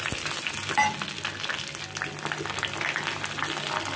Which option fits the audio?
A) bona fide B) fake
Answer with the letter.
A